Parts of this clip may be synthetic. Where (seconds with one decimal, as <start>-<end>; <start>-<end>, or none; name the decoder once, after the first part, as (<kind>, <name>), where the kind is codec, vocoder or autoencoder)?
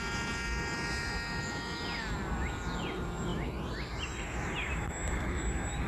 none